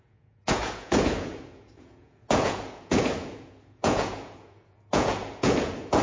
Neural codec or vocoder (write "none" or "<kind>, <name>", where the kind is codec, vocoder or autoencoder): vocoder, Vocos